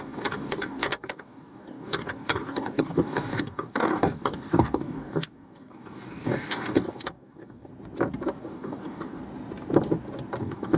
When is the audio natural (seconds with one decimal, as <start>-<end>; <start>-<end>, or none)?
7.7-8.4; 9.2-10.4